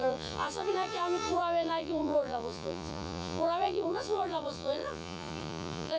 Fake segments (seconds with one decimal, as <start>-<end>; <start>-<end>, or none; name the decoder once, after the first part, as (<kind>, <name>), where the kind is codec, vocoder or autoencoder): 0.0-6.0 (vocoder, Vocos)